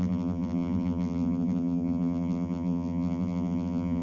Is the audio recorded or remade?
remade